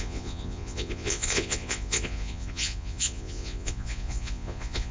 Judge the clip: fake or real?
fake